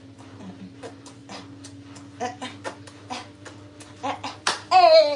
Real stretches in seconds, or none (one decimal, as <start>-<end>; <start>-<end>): 0.0-5.2